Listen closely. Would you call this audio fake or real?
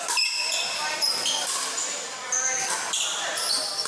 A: real